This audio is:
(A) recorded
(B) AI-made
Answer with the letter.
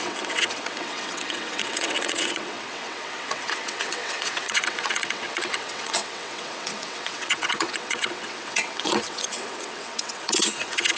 B